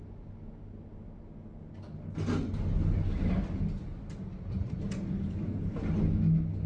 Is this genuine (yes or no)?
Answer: yes